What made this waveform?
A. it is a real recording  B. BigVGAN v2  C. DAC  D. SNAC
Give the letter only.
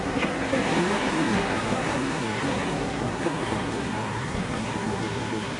D